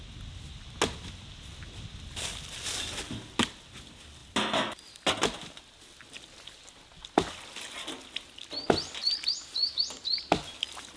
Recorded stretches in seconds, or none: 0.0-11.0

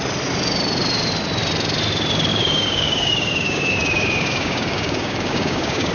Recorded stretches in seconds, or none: 0.0-2.3